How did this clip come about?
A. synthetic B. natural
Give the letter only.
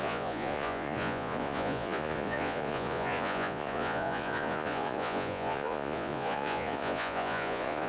A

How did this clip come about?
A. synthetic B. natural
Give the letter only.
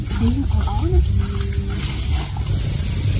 B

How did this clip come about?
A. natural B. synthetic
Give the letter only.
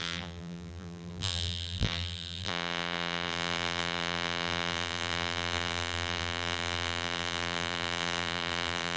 B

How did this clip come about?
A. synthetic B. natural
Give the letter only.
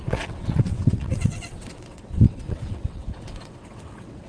A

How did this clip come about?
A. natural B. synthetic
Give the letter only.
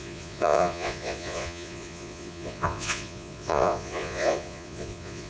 B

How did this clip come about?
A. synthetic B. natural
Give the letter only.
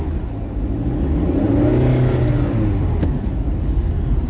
B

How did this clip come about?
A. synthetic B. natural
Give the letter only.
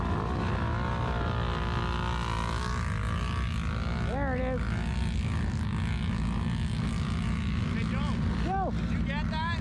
B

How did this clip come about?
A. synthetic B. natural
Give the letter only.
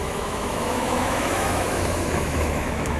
A